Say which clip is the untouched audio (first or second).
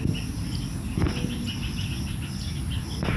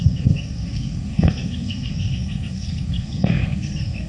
first